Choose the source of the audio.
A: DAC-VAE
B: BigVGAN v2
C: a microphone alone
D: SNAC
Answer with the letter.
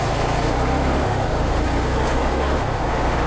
A